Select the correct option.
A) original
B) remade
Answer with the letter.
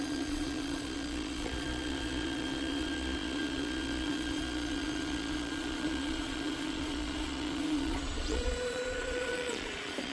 B